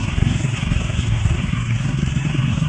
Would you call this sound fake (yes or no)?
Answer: yes